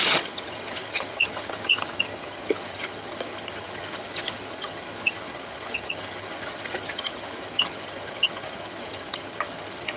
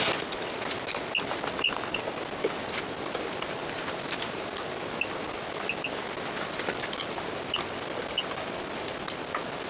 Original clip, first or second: second